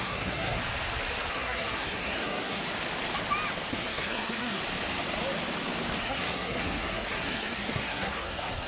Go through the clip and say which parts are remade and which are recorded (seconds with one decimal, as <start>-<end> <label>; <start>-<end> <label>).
0.0-0.6 remade; 0.6-1.3 recorded; 1.3-2.6 remade; 2.6-3.7 recorded; 3.7-4.6 remade; 4.6-6.0 recorded; 6.0-8.7 remade